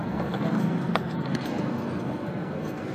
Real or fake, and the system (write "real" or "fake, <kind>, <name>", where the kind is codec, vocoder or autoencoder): fake, codec, SNAC